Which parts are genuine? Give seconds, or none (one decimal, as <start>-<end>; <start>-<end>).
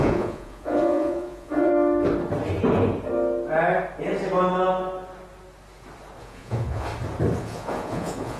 1.7-6.2; 6.9-7.4